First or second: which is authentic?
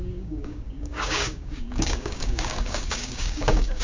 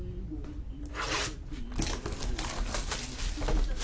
second